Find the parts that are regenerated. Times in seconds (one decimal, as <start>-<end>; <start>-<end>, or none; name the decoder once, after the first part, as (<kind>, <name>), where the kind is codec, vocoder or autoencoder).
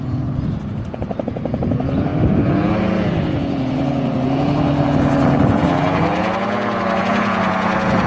0.0-8.1 (vocoder, Vocos)